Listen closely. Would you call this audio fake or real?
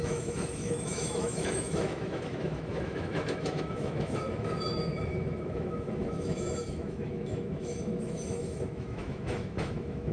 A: fake